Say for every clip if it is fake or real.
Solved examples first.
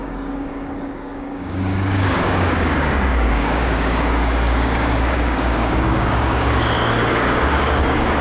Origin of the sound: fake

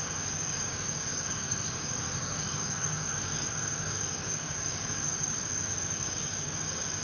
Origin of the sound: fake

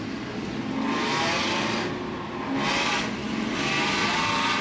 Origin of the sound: real